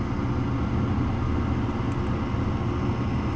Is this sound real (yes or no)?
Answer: yes